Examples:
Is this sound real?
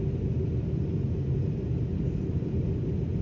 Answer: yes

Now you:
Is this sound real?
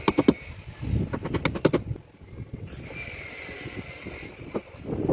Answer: yes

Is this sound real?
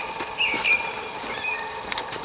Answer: yes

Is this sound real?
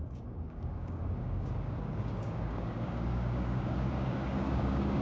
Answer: no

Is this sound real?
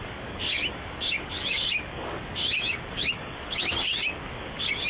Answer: no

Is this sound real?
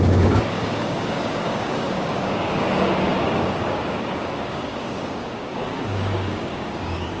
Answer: no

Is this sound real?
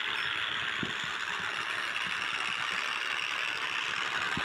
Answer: yes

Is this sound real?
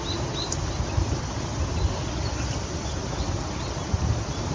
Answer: yes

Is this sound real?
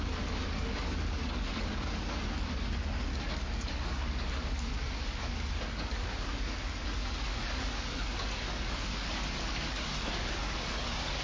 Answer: no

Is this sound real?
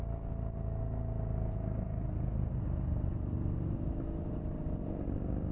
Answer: yes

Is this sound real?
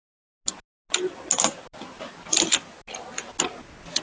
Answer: yes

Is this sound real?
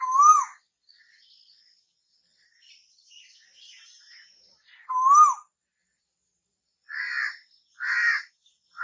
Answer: yes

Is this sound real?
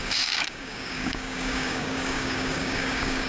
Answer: no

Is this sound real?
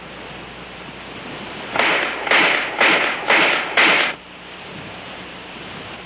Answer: yes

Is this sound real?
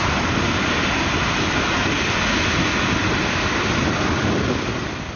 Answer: yes